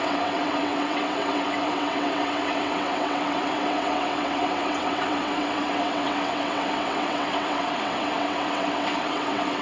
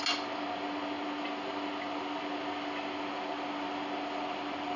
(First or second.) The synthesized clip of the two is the first